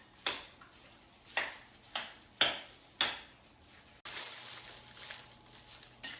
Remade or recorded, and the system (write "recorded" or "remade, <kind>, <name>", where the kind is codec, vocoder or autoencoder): recorded